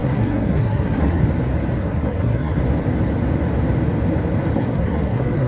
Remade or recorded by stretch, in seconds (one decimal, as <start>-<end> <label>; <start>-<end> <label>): 0.0-1.2 remade; 1.2-1.8 recorded; 1.8-2.6 remade; 2.6-4.5 recorded; 4.5-5.5 remade